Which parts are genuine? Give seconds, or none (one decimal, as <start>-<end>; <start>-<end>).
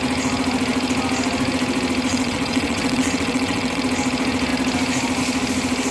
0.0-2.1; 3.8-5.9